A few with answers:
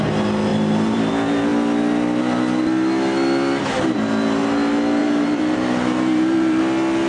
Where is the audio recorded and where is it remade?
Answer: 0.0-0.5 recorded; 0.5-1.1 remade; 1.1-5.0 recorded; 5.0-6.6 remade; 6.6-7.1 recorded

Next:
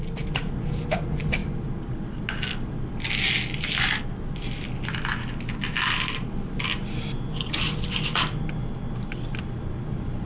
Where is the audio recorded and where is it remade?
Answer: 0.0-10.3 recorded

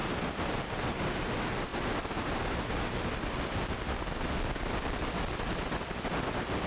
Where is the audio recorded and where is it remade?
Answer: 0.0-6.7 recorded